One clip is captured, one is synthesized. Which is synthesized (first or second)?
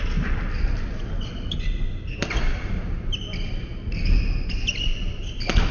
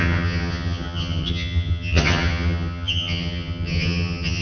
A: second